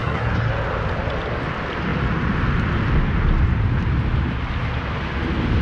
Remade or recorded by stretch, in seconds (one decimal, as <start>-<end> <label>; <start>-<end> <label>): 0.0-0.5 remade; 0.5-5.6 recorded